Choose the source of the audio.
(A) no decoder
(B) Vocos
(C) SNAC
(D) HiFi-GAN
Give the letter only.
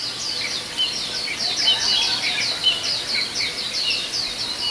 A